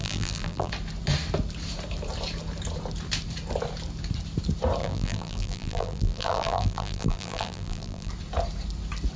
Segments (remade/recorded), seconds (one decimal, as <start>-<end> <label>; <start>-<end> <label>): 0.0-0.7 remade; 0.7-4.8 recorded; 4.8-8.1 remade; 8.1-9.2 recorded